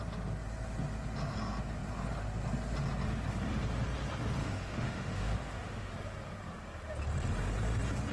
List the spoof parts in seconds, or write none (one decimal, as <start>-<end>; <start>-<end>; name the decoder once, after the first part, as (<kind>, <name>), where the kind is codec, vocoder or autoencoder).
4.4-5.9 (autoencoder, DAC-VAE)